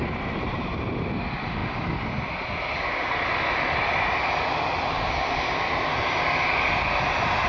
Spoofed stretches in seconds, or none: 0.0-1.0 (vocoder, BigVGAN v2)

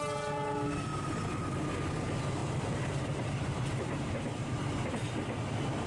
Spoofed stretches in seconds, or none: 2.4-4.9 (vocoder, BigVGAN v2)

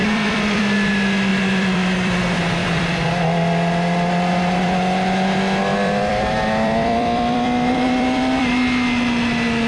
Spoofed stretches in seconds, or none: 0.0-0.6 (vocoder, BigVGAN v2); 1.3-2.2; 2.6-3.1; 5.7-8.5

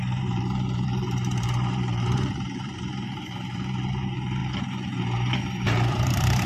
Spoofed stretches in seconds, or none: 0.0-4.4 (vocoder, BigVGAN v2); 5.4-6.5

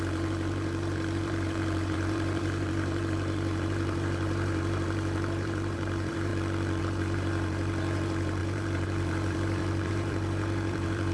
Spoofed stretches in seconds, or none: 0.0-6.3 (vocoder, BigVGAN v2); 6.8-11.1

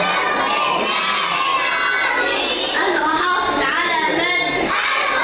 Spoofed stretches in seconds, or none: 0.0-1.5 (vocoder, BigVGAN v2); 4.6-5.2

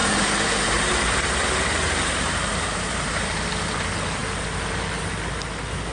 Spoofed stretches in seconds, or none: 0.0-3.5 (vocoder, BigVGAN v2)